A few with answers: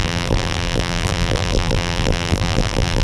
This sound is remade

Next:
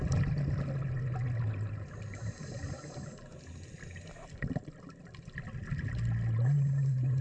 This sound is recorded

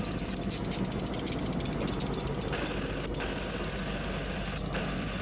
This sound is recorded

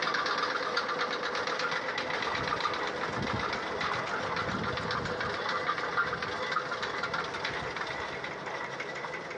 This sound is recorded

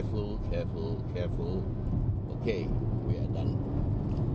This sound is recorded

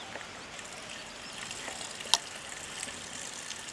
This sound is recorded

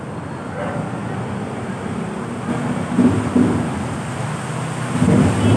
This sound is recorded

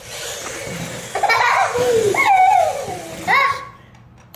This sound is recorded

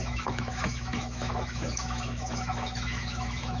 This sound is remade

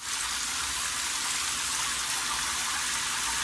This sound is recorded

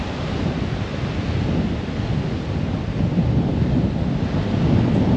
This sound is recorded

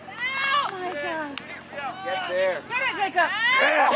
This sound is recorded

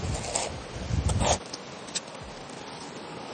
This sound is recorded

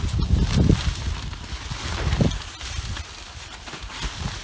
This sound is recorded